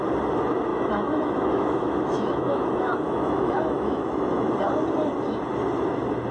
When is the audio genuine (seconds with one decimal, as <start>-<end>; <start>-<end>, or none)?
0.0-0.7; 4.5-6.3